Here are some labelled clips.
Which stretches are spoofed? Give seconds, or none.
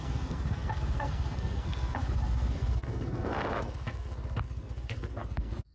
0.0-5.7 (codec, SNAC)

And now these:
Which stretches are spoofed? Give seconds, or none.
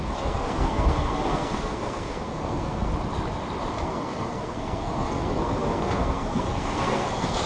0.0-2.9 (codec, SNAC); 3.7-7.5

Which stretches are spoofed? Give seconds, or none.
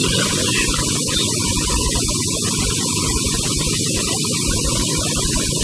3.4-5.6 (vocoder, BigVGAN v2)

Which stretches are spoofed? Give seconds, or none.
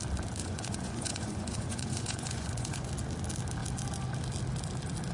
0.4-2.9 (vocoder, Vocos)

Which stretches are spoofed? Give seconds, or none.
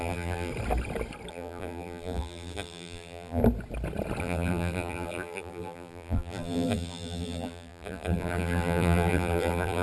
0.0-0.5 (vocoder, BigVGAN v2); 1.3-3.4; 4.2-9.8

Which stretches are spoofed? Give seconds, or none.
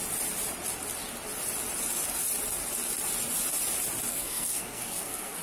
4.1-5.4 (codec, SNAC)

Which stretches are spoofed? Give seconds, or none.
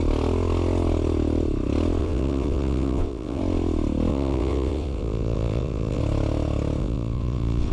2.0-3.4 (vocoder, WaveNeXt); 4.1-6.0; 6.8-7.7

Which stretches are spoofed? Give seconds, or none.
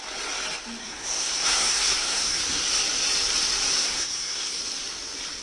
0.8-2.6 (codec, SNAC); 3.8-4.6